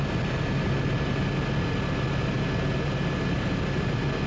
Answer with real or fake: real